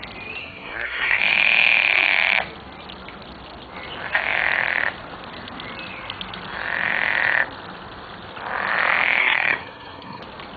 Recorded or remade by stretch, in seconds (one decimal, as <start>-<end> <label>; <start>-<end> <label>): 0.0-0.4 recorded; 0.4-1.2 remade; 1.2-9.2 recorded; 9.2-10.2 remade; 10.2-10.6 recorded

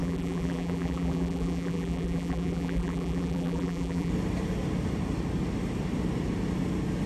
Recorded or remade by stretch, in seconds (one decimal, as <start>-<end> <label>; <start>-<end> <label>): 0.0-4.1 remade; 4.1-7.1 recorded

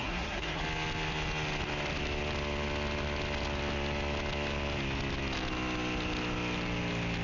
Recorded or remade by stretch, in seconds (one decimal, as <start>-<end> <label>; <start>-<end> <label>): 0.0-0.6 remade; 0.6-7.2 recorded